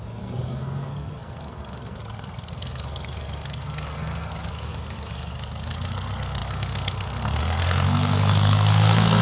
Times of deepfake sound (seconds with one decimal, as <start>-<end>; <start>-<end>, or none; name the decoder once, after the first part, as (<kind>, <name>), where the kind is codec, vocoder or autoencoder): 0.0-9.2 (codec, SNAC)

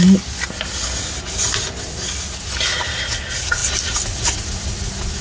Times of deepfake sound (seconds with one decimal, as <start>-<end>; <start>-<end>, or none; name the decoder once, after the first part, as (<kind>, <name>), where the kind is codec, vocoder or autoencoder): none

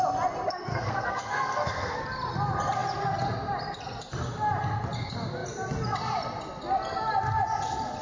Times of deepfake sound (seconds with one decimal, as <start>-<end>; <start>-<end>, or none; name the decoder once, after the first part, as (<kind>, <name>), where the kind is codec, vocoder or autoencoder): 0.7-2.0 (codec, SNAC)

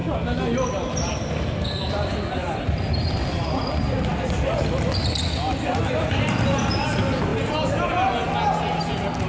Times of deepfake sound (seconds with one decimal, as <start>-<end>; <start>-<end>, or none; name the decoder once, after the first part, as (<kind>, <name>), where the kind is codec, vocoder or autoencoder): none